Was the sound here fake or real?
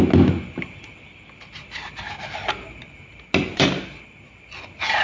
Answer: real